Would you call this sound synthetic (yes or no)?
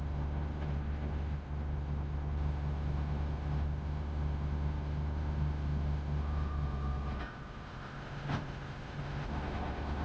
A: yes